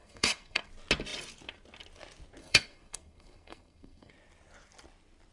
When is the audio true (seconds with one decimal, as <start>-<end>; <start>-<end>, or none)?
0.7-2.4; 4.1-5.3